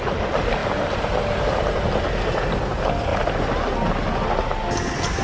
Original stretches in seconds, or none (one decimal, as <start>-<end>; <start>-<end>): 0.0-5.2